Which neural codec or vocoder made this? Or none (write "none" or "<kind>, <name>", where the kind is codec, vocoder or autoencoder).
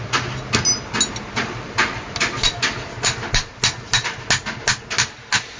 none